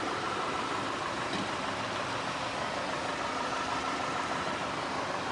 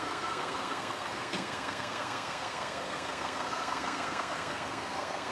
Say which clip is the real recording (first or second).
first